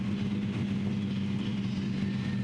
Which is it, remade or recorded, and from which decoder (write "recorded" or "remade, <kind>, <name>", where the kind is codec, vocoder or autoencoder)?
recorded